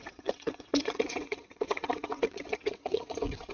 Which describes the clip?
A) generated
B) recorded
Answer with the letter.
A